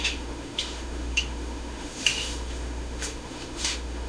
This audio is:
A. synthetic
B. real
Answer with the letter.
A